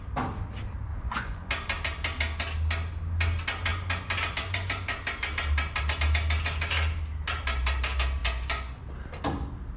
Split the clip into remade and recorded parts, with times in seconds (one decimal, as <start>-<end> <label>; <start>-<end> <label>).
0.0-0.9 recorded; 0.9-1.5 remade; 1.5-8.2 recorded; 8.2-8.8 remade; 8.8-9.8 recorded